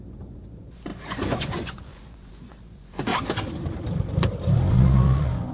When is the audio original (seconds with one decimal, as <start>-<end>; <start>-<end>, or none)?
3.1-4.7